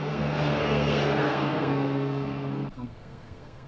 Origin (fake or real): fake